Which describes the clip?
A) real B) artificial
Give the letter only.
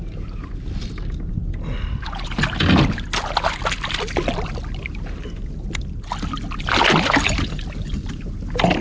A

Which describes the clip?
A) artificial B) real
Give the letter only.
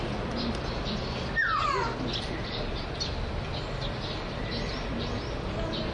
B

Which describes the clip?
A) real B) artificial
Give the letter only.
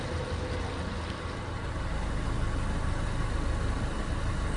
A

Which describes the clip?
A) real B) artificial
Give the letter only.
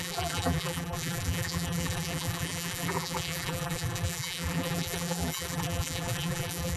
B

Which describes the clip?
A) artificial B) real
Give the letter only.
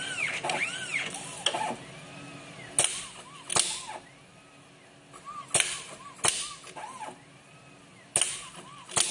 B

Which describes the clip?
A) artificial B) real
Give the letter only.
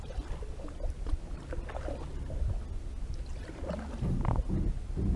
B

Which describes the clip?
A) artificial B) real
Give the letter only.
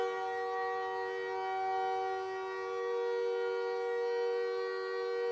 B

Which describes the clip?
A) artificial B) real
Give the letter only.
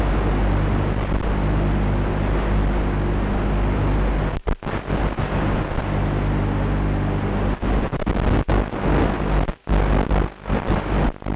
B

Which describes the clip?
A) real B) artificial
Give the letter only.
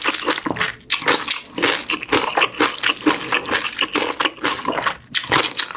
A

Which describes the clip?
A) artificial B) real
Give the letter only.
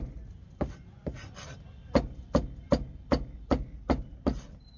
B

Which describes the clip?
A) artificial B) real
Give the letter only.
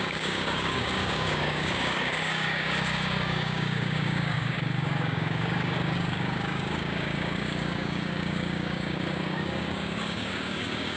A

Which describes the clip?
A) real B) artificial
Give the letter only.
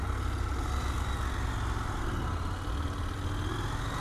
A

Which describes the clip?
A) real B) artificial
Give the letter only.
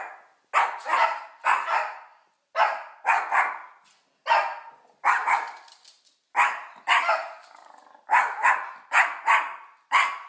A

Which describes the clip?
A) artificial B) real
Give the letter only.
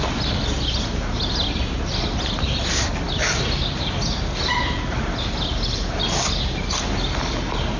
B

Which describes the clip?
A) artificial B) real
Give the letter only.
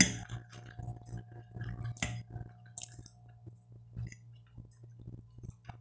B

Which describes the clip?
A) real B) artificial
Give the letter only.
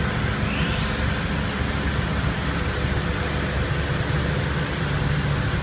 A